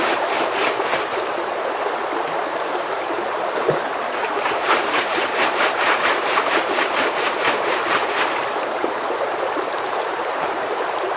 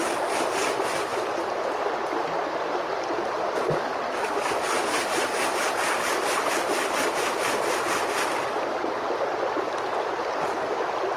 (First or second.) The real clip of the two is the second